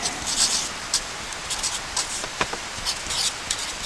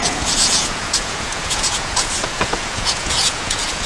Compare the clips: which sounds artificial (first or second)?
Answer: second